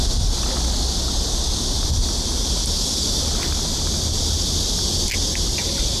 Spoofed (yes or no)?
no